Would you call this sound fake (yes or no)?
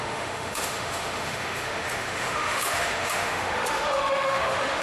yes